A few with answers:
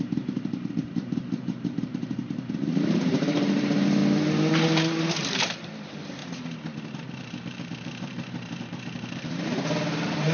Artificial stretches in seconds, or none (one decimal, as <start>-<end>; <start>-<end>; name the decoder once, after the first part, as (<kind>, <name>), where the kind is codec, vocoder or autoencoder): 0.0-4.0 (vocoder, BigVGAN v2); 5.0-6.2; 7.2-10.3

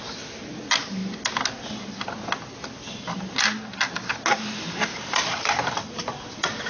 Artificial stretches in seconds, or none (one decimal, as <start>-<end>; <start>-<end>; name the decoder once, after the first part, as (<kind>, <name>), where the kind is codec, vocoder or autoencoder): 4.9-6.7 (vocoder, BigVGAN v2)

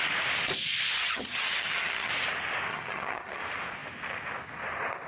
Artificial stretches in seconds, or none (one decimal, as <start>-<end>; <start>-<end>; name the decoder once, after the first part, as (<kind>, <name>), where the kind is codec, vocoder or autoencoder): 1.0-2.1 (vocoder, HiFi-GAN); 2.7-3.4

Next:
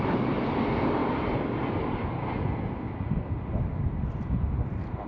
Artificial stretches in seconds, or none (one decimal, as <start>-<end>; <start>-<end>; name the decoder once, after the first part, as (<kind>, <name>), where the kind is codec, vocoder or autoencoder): none